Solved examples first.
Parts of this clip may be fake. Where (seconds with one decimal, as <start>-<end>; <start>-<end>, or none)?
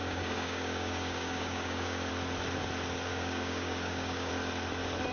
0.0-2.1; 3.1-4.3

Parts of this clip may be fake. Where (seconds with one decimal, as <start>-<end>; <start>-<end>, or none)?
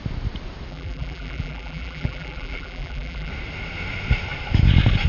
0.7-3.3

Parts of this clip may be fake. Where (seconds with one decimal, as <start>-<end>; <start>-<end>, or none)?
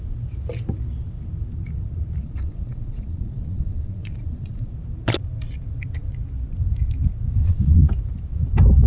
2.2-4.7; 7.4-7.9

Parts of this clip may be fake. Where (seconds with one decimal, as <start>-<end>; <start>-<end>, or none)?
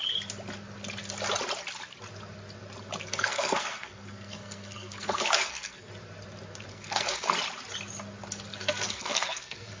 3.1-5.9; 6.7-7.3; 8.5-9.8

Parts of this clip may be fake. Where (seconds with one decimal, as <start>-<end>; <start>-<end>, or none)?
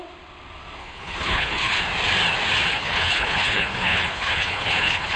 0.8-1.8; 2.7-5.2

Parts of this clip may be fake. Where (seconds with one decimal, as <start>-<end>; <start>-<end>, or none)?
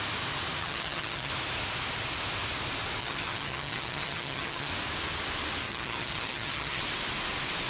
0.6-1.3; 3.0-4.7; 5.6-6.8